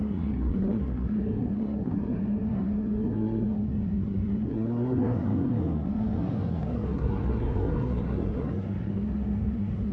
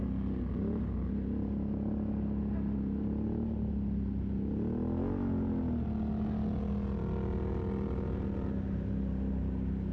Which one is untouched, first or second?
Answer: second